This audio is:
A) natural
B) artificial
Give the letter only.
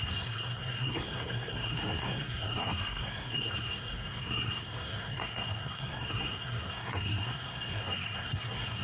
B